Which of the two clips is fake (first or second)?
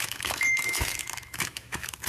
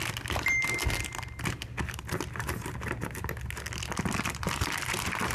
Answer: first